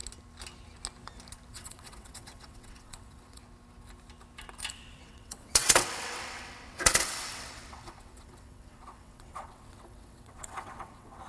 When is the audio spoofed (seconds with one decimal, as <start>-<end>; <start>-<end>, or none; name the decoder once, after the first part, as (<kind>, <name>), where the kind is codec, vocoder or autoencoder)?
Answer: 1.5-3.4 (vocoder, WaveNeXt); 4.7-11.3